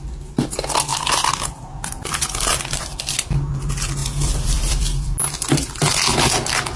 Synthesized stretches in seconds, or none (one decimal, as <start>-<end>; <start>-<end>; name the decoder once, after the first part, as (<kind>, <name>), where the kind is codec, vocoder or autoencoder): 0.9-3.5 (vocoder, BigVGAN v2); 4.0-5.9